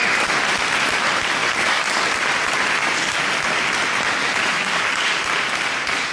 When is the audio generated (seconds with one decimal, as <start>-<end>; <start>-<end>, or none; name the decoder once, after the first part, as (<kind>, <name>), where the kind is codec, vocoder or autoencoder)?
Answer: 1.4-2.1 (codec, DAC); 2.8-3.3; 4.2-5.2